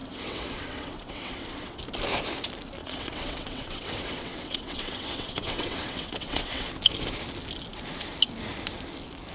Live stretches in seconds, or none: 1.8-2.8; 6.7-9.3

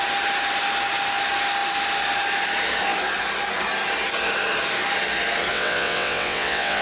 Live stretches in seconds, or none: 0.0-5.5

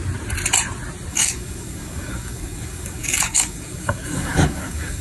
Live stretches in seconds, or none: 0.0-1.1

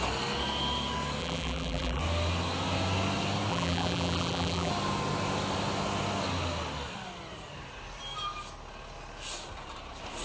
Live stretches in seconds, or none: 0.0-1.2; 2.0-3.5; 4.7-10.2

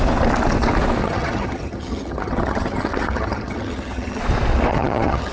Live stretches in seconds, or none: 0.0-1.0; 4.2-4.7

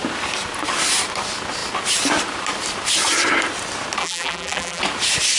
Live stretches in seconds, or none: 0.0-4.0; 4.8-5.4

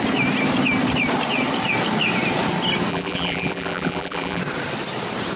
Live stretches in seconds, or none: 0.0-2.9; 4.4-5.4

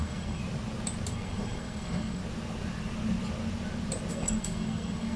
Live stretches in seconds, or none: 0.4-1.1; 2.2-4.1